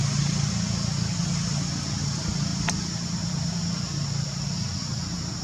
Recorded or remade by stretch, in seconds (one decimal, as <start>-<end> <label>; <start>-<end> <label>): 0.0-0.5 remade; 0.5-2.5 recorded; 2.5-3.3 remade; 3.3-5.4 recorded